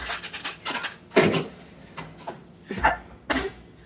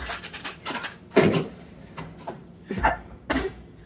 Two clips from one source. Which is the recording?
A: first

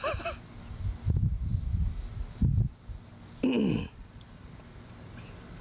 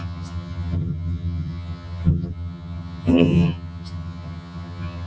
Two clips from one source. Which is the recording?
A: first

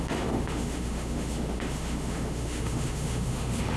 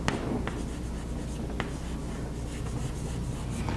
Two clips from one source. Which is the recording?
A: second